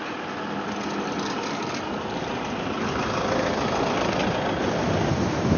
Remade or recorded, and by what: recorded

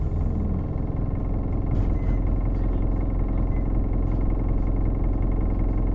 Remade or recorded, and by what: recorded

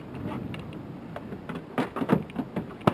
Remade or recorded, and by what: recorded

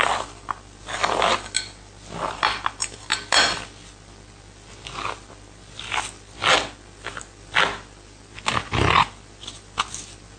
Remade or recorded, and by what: recorded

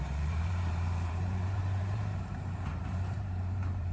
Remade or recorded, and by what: remade, vocoder, BigVGAN v2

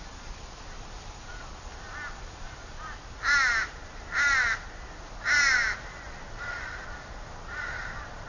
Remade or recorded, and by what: recorded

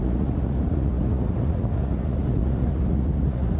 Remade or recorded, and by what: remade, vocoder, Vocos